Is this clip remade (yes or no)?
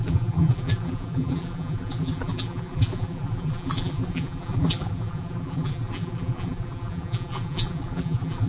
yes